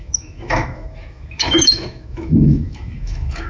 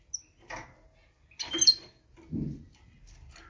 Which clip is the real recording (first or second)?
second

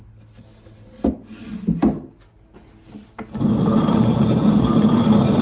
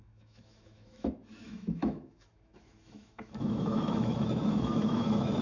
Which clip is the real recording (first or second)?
first